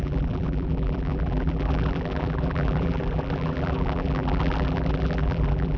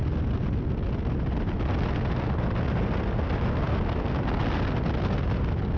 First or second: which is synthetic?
first